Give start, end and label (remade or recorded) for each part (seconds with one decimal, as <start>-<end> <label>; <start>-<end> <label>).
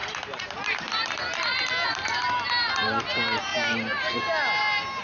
0.0-5.0 recorded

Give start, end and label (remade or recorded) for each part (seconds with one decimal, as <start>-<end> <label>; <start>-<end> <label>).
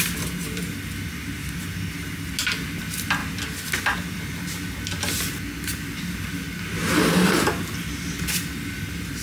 0.0-9.2 recorded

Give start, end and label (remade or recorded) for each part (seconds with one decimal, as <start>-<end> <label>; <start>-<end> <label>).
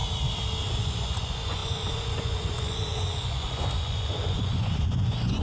0.0-0.7 recorded; 0.7-5.4 remade